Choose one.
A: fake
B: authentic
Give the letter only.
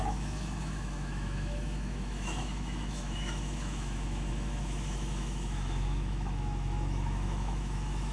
A